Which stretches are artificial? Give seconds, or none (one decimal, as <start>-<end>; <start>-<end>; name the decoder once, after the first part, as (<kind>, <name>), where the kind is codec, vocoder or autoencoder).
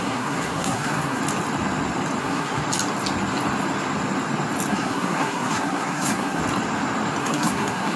0.0-1.2 (codec, SNAC); 2.2-2.6; 4.7-6.4; 7.2-8.0